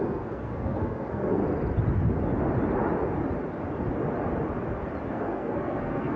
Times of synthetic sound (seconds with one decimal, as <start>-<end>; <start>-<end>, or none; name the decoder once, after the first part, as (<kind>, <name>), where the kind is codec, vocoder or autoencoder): 0.0-1.4 (codec, SNAC); 5.1-6.2